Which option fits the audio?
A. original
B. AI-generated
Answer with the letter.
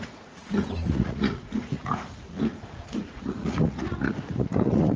B